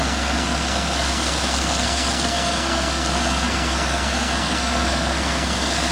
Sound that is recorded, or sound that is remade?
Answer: remade